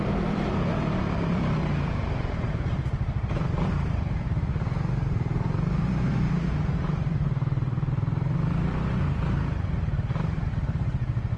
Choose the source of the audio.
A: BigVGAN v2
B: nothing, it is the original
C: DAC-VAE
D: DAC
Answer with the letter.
A